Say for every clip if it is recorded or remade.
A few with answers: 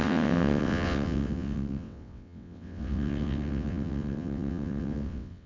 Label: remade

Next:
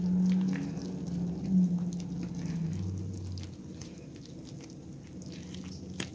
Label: recorded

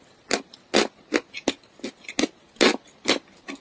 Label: recorded